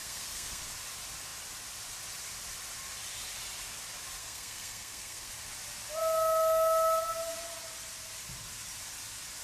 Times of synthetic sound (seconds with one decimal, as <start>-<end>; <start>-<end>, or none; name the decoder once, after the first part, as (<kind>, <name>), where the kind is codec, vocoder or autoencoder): 0.0-0.6 (codec, SNAC); 4.2-5.3